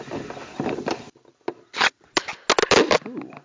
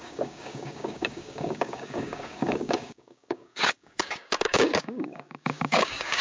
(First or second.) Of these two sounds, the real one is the first